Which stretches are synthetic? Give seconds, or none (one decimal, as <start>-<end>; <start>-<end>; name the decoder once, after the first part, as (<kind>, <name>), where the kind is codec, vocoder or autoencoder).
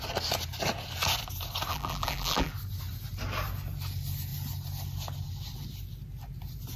1.7-2.5 (vocoder, BigVGAN v2)